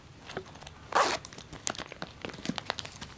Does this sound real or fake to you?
real